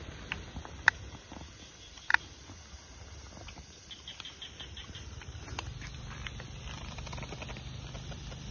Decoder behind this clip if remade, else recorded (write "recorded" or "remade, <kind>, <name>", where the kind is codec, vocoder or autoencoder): recorded